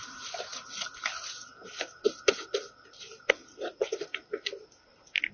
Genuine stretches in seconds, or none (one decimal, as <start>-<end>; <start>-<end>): 0.0-5.3